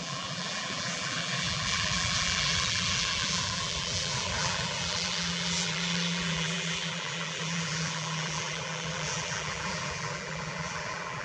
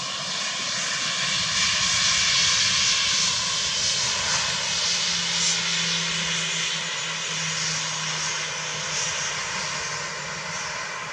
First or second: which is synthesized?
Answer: first